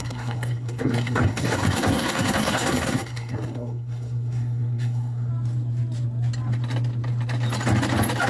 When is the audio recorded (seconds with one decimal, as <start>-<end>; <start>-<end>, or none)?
5.3-8.3